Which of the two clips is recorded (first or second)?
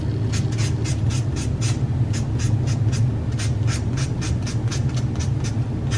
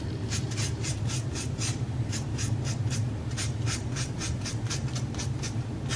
first